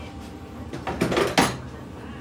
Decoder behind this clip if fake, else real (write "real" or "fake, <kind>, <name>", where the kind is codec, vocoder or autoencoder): real